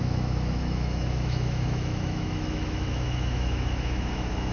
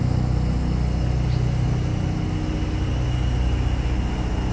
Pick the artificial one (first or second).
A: first